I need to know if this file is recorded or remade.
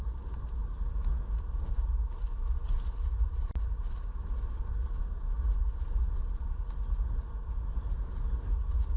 recorded